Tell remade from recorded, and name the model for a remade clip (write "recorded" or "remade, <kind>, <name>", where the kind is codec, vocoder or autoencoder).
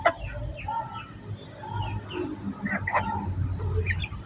recorded